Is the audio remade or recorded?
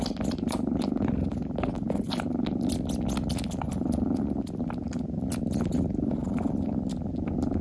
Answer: recorded